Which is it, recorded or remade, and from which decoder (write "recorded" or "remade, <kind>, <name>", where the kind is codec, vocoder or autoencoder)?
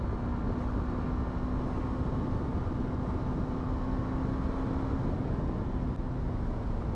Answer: recorded